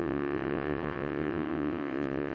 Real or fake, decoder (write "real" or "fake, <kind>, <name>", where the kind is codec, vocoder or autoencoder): fake, vocoder, WaveNeXt